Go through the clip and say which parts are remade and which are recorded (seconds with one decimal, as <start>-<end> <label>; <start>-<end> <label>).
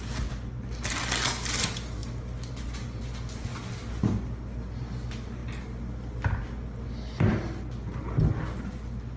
0.0-9.2 recorded